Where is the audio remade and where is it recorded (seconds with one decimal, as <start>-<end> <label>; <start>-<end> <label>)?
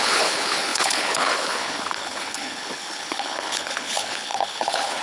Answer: 0.0-5.0 remade